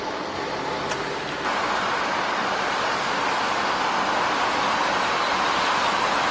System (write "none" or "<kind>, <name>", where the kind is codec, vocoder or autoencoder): none